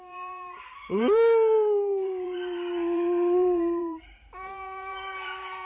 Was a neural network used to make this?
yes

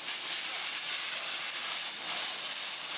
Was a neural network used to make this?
no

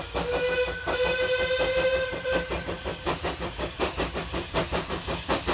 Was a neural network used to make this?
no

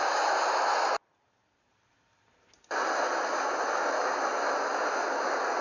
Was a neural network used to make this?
no